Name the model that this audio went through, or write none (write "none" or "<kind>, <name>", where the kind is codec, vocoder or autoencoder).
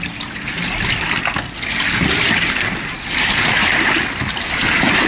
none